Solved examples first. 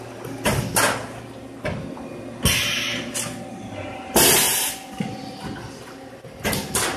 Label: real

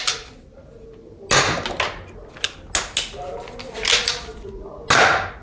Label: real